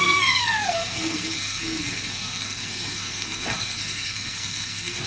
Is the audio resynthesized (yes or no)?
yes